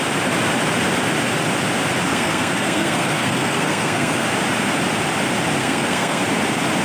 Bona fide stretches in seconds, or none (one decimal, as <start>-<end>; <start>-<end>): 0.0-2.1; 4.3-5.6; 6.2-6.8